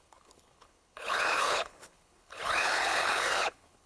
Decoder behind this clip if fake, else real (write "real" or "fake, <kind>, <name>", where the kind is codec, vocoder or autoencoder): fake, codec, HILCodec